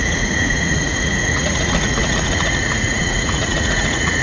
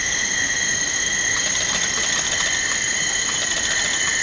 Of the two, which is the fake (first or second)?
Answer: first